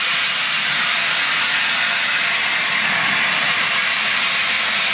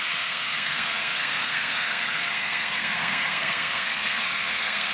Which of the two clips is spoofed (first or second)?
second